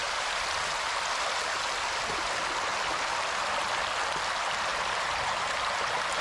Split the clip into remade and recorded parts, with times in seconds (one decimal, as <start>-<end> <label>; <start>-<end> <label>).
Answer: 0.0-1.0 remade; 1.0-4.7 recorded; 4.7-6.2 remade